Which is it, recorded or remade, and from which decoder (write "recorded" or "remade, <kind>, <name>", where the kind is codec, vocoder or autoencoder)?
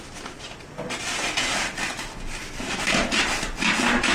recorded